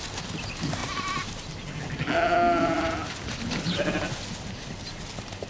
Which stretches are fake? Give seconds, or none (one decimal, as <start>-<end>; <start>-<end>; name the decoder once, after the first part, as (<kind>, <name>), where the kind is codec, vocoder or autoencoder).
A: none